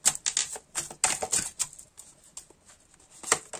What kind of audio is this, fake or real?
real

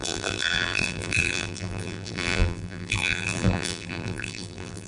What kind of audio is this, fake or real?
fake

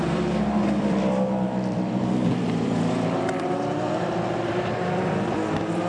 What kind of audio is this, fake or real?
fake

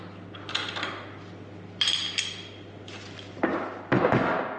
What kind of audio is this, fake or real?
real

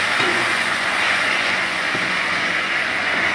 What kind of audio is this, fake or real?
fake